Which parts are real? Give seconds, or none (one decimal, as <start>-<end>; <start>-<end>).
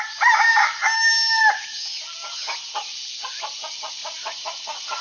0.0-4.0